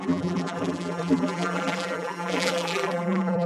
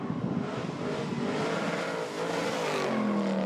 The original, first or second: second